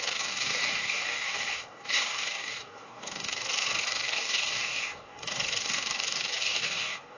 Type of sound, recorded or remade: remade